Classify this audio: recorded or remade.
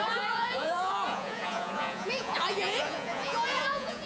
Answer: remade